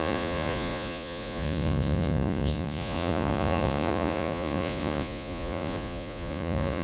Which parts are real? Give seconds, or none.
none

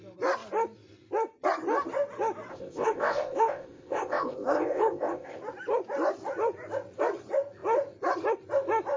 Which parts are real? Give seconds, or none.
0.0-2.5; 5.4-9.0

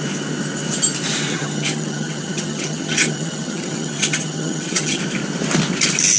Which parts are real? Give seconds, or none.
0.0-1.3; 5.0-6.2

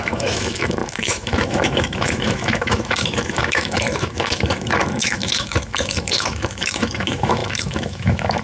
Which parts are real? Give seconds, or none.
none

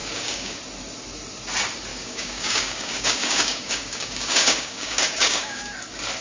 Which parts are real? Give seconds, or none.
0.6-1.9; 5.6-6.2